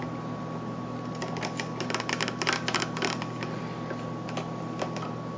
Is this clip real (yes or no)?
yes